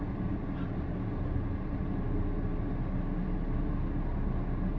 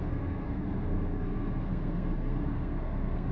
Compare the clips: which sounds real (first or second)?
first